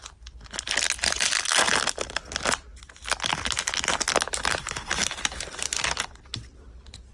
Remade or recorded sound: recorded